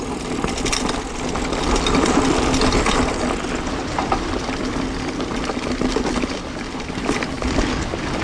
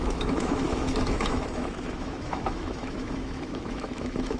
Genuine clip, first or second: first